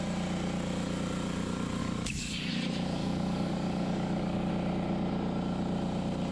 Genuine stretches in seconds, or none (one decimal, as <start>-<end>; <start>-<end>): 0.0-1.8; 2.5-3.0; 4.5-6.3